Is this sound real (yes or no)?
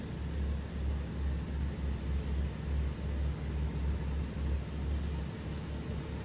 yes